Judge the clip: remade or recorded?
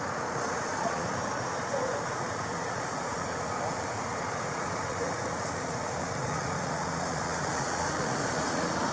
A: remade